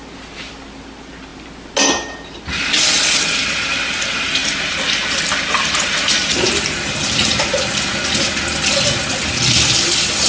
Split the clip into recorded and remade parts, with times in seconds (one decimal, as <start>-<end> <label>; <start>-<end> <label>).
0.0-10.3 recorded